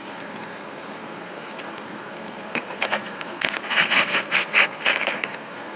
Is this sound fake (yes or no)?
yes